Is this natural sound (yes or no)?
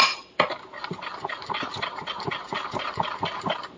no